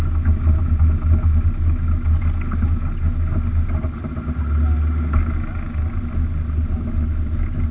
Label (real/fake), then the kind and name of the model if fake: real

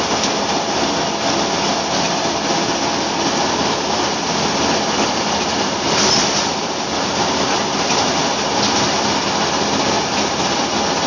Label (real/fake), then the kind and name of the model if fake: real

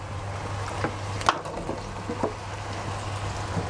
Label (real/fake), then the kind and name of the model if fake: real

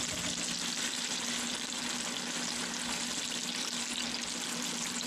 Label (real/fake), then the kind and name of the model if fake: real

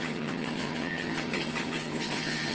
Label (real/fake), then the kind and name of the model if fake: fake, vocoder, HiFi-GAN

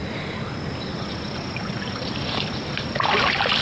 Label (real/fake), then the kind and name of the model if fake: real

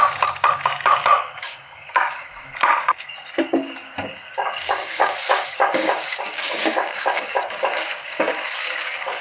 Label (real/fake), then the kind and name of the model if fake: fake, codec, DAC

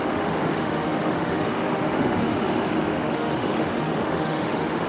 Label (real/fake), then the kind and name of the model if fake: fake, autoencoder, DAC-VAE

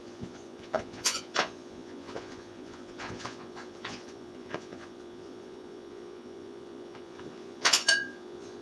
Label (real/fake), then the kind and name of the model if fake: fake, vocoder, Vocos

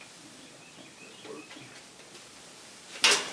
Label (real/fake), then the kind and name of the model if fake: real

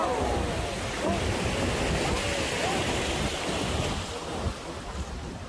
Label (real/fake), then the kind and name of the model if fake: real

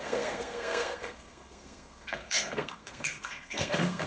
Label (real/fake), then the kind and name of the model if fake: fake, codec, SNAC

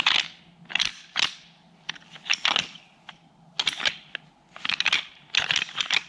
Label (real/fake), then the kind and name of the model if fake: real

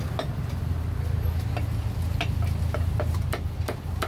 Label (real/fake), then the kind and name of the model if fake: real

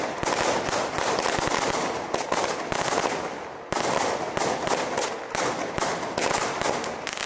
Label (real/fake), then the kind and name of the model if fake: real